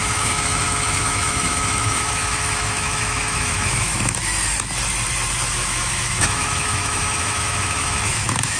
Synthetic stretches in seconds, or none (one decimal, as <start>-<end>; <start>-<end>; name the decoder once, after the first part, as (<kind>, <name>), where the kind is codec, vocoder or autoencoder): 0.0-4.3 (autoencoder, DAC-VAE); 5.5-8.6

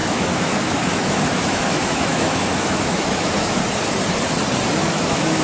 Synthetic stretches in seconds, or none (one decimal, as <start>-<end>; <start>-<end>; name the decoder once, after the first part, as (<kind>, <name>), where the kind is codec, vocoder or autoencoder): 0.0-3.6 (autoencoder, DAC-VAE); 4.8-5.4

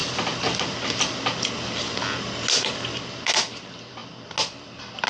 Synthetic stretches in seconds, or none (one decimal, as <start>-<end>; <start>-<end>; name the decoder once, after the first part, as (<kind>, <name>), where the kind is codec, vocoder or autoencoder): none

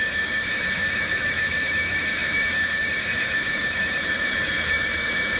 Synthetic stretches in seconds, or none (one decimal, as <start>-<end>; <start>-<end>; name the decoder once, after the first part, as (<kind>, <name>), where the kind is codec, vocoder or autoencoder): 0.0-5.4 (autoencoder, DAC-VAE)

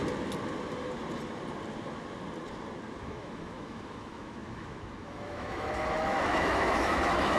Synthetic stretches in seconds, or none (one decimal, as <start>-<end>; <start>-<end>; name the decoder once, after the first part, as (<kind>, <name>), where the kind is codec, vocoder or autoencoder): 3.0-7.4 (autoencoder, DAC-VAE)

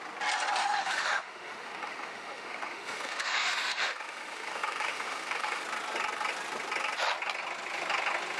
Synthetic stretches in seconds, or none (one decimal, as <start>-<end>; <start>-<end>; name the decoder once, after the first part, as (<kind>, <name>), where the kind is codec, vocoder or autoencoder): 0.6-5.6 (autoencoder, DAC-VAE)